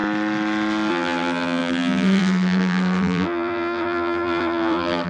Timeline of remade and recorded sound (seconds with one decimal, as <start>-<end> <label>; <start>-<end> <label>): 0.0-0.9 recorded; 0.9-5.1 remade